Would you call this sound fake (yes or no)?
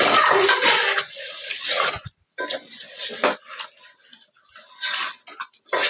no